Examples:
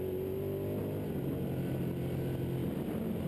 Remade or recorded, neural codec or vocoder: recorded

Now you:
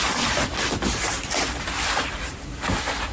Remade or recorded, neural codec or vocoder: remade, vocoder, BigVGAN v2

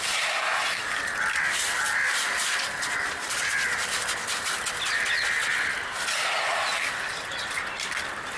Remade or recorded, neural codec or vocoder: recorded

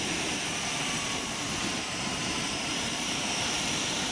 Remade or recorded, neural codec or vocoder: remade, vocoder, BigVGAN v2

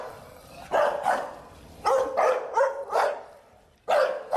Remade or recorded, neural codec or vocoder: recorded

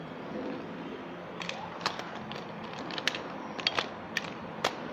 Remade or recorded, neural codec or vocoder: recorded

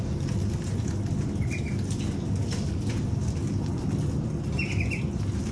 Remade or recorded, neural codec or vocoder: recorded